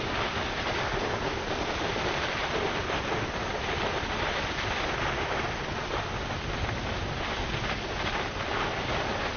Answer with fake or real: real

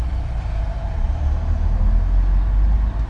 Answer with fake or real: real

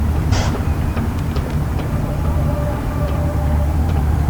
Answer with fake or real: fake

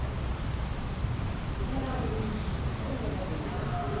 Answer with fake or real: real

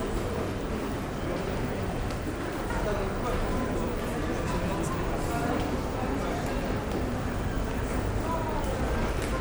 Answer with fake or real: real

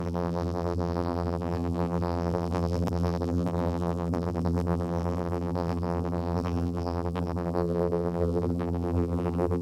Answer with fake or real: fake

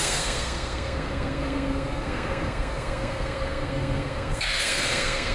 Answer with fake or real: fake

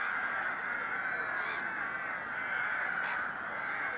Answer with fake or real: real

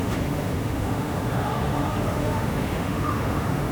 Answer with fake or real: fake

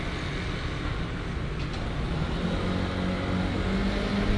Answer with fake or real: real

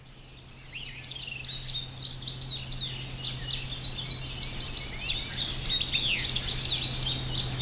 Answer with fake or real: real